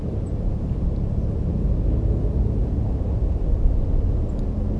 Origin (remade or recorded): recorded